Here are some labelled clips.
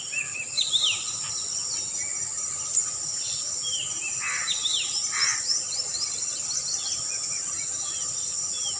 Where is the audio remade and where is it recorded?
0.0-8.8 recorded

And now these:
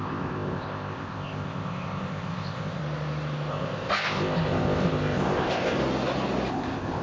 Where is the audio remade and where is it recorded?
0.0-2.8 remade; 2.8-3.5 recorded; 3.5-5.8 remade; 5.8-6.5 recorded; 6.5-7.0 remade

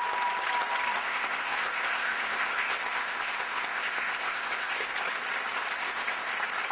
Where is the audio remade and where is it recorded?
0.0-1.0 recorded; 1.0-4.9 remade; 4.9-5.8 recorded; 5.8-6.3 remade; 6.3-6.7 recorded

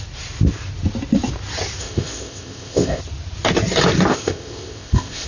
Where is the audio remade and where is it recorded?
0.0-1.8 recorded; 1.8-3.0 remade; 3.0-4.1 recorded; 4.1-5.3 remade

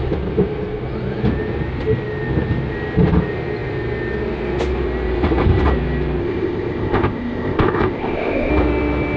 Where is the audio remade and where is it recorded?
0.0-6.2 recorded; 6.2-8.5 remade; 8.5-9.2 recorded

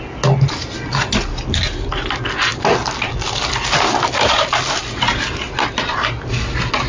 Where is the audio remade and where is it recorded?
0.0-6.9 recorded